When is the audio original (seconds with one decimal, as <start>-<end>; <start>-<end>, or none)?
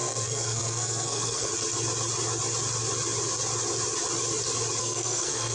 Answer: 1.5-4.8